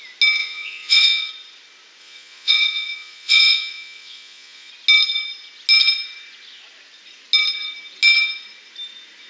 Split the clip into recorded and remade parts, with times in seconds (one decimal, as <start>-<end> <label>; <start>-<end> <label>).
0.0-0.4 recorded; 0.4-1.3 remade; 1.3-2.0 recorded; 2.0-4.7 remade; 4.7-9.3 recorded